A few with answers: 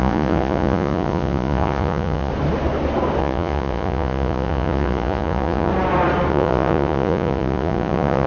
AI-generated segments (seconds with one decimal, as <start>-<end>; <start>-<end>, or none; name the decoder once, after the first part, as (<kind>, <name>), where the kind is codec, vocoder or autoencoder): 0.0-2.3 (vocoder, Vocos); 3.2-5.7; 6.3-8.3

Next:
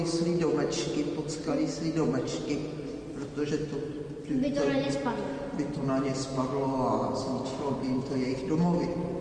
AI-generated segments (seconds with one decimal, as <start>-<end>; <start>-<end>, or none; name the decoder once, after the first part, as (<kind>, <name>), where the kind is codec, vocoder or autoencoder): none

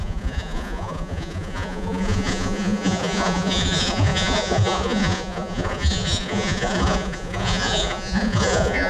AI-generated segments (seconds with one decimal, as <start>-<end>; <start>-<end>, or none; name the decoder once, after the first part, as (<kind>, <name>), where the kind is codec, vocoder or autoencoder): 0.0-8.9 (vocoder, Vocos)

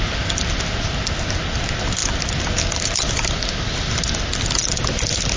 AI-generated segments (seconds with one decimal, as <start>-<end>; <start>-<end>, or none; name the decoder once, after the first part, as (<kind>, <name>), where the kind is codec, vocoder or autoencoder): none

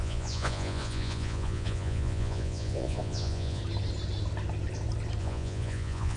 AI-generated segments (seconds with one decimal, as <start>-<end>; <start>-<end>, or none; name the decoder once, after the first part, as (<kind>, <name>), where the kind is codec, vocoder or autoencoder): 0.0-3.6 (vocoder, Vocos); 5.2-6.2